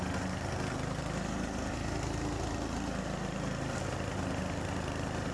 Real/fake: real